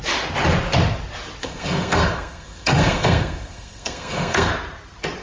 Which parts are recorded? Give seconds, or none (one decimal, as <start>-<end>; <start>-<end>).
0.0-1.4; 4.5-5.2